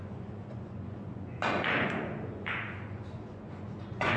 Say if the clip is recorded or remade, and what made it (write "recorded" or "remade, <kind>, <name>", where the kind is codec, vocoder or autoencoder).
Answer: remade, vocoder, Vocos